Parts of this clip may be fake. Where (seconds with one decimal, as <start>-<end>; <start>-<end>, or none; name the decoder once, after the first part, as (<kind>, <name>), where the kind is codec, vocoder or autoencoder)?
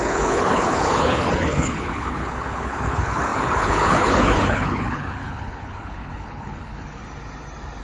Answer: 0.0-7.0 (codec, HILCodec)